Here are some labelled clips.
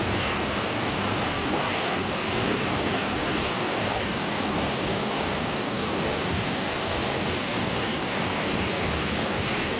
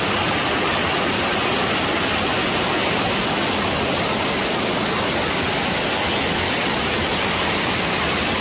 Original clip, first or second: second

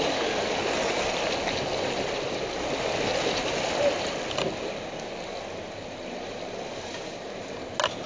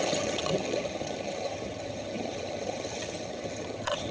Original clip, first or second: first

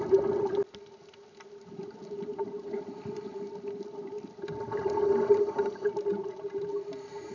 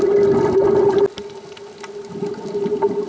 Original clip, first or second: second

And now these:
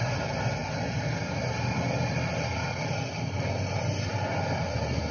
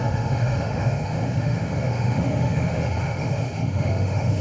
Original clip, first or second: first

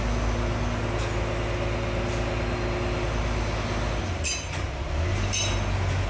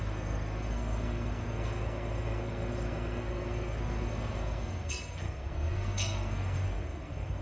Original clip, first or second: first